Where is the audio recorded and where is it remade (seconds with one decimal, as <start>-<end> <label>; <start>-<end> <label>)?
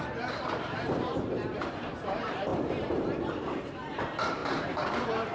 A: 0.0-5.3 remade